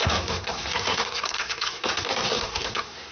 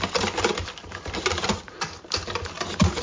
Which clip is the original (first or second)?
second